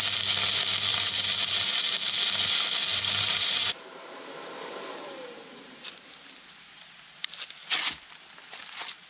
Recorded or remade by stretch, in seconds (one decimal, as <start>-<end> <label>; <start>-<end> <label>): 0.0-0.9 recorded; 0.9-1.7 remade; 1.7-2.9 recorded; 2.9-5.9 remade; 5.9-9.1 recorded